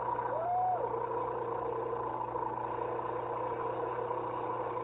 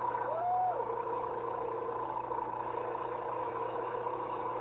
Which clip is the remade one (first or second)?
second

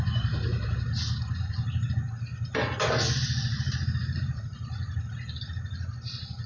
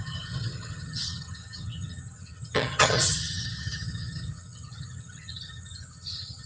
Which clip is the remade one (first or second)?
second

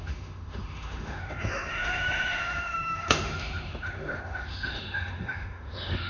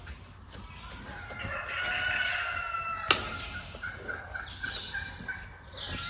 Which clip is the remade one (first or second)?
first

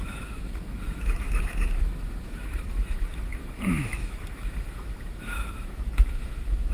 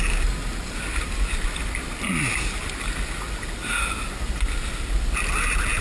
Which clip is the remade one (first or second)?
first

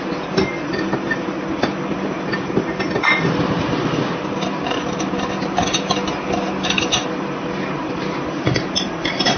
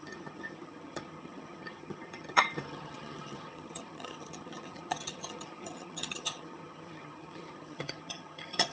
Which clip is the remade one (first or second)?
second